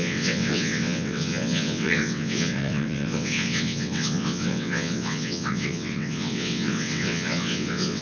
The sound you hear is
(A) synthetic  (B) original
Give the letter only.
A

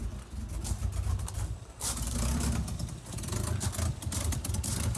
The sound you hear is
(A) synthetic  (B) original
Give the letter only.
A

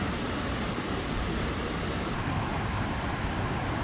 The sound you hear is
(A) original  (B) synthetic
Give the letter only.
A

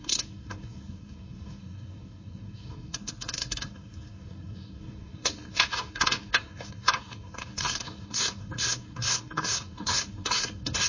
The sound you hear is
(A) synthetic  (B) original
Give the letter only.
A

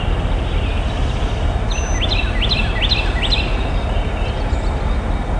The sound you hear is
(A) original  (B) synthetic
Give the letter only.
A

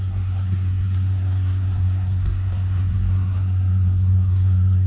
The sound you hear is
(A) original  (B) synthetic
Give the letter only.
B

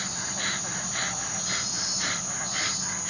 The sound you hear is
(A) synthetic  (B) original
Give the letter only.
B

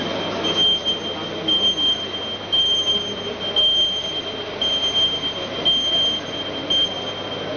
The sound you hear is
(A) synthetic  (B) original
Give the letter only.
B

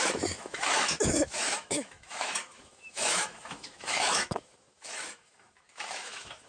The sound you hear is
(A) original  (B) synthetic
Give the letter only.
B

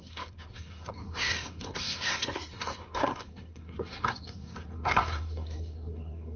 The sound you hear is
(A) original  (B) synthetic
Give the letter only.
B